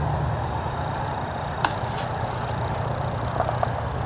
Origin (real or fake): real